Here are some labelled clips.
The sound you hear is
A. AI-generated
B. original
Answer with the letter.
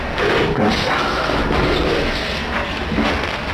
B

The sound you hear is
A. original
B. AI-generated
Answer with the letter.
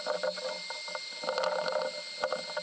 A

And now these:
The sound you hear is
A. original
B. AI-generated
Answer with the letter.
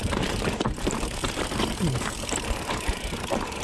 B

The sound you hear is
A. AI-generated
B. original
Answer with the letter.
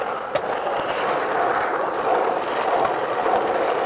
B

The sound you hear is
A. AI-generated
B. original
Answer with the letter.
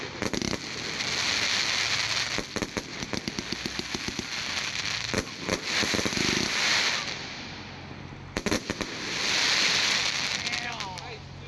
B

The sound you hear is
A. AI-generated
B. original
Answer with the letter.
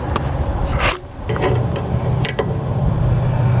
B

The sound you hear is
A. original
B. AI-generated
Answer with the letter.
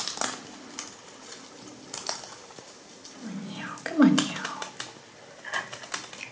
A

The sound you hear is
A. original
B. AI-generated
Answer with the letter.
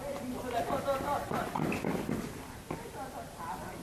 A